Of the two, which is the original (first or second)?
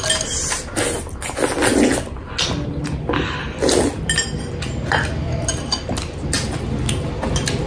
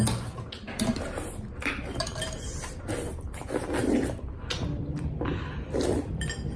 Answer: first